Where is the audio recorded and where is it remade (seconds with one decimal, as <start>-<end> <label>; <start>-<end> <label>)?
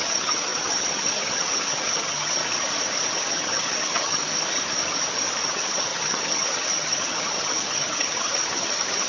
0.0-2.4 remade; 2.4-3.1 recorded; 3.1-4.2 remade; 4.2-5.5 recorded; 5.5-9.1 remade